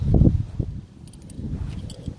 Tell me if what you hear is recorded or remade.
recorded